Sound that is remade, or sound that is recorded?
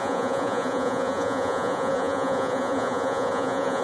remade